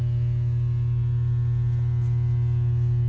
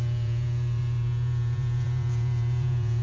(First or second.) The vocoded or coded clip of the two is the second